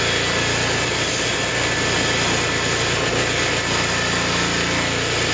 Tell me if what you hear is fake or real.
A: real